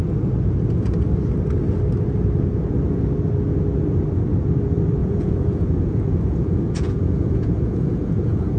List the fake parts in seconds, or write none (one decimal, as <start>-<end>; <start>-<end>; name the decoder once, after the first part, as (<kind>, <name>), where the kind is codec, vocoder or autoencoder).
5.0-8.6 (vocoder, Vocos)